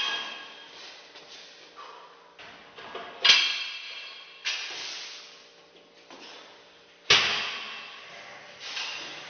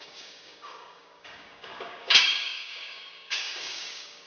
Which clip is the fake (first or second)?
second